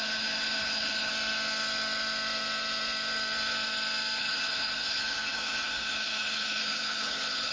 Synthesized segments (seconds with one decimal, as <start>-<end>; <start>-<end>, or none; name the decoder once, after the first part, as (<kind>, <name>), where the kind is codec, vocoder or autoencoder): 0.0-1.1 (codec, HILCodec); 4.2-7.5